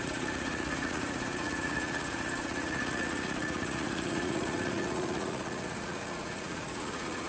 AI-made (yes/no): yes